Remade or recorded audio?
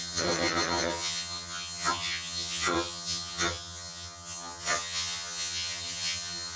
remade